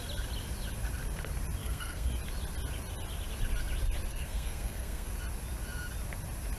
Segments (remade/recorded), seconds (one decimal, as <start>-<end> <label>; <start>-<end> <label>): 0.0-1.6 recorded; 1.6-2.1 remade; 2.1-4.1 recorded; 4.1-5.1 remade; 5.1-6.6 recorded